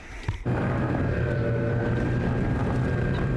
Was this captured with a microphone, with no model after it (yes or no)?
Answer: no